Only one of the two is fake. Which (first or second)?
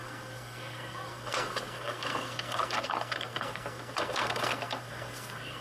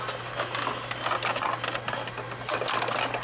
first